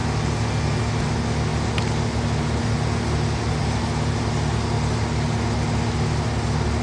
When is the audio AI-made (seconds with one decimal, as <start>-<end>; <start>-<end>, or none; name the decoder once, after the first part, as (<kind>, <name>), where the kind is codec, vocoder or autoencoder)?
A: none